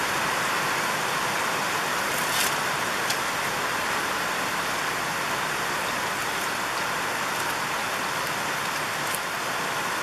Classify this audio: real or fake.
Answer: real